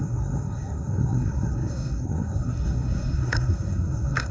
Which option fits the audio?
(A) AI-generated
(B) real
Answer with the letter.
A